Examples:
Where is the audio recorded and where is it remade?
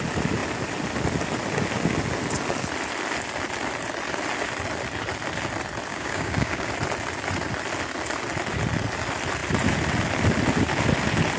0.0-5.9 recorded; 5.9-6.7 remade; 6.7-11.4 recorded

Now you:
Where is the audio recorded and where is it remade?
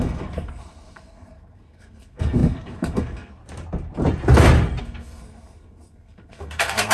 0.0-3.4 remade; 3.4-4.8 recorded; 4.8-6.9 remade